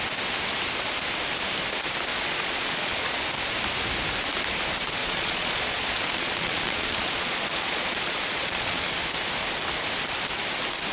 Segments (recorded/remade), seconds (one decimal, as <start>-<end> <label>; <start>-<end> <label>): 0.0-2.1 recorded; 2.1-3.2 remade; 3.2-5.0 recorded; 5.0-8.9 remade; 8.9-10.9 recorded